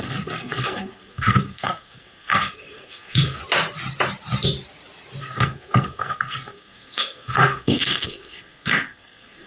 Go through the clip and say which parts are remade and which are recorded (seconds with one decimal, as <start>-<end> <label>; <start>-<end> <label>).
0.0-3.4 remade; 3.4-5.2 recorded; 5.2-9.5 remade